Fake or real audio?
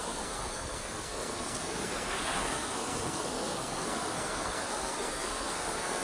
fake